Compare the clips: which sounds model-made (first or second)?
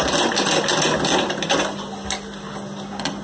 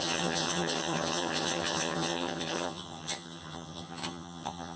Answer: second